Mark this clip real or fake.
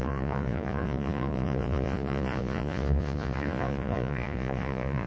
fake